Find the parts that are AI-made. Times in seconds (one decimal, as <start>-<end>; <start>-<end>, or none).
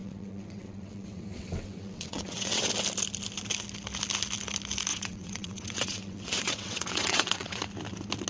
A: 0.0-2.7; 4.9-7.6